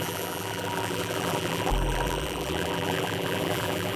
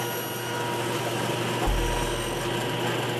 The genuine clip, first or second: second